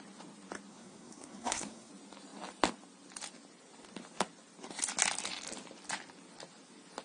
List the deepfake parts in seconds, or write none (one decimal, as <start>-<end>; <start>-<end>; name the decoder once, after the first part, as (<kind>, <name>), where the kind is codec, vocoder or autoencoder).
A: 0.7-1.9 (codec, SNAC)